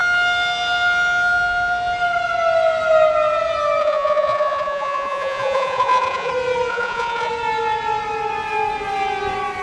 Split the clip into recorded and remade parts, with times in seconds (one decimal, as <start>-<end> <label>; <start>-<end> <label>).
0.0-3.8 recorded; 3.8-6.3 remade; 6.3-6.7 recorded; 6.7-7.3 remade; 7.3-9.6 recorded

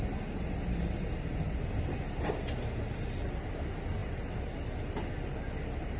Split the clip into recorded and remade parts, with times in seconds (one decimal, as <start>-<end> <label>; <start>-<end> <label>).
0.0-6.0 recorded

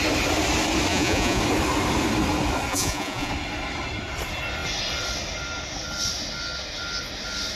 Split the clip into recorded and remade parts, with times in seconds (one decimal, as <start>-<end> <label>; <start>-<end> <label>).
0.0-0.9 recorded; 0.9-1.4 remade; 1.4-2.7 recorded; 2.7-3.3 remade; 3.3-7.6 recorded

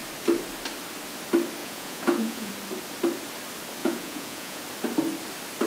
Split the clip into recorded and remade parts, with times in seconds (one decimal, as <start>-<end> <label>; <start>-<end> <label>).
0.0-1.6 recorded; 1.6-2.5 remade; 2.5-3.8 recorded; 3.8-4.6 remade; 4.6-5.7 recorded

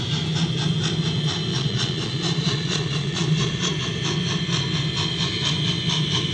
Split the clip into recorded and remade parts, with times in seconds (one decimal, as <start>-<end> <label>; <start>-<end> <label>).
0.0-1.5 recorded; 1.5-3.7 remade; 3.7-6.3 recorded